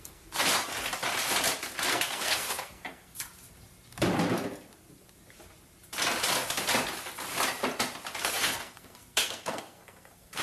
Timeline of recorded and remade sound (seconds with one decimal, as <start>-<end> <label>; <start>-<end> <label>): 0.0-0.7 remade; 0.7-1.9 recorded; 1.9-3.3 remade; 3.3-8.2 recorded; 8.2-10.4 remade